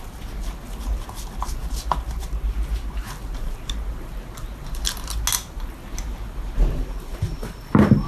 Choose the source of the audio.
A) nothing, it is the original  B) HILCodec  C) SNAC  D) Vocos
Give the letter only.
A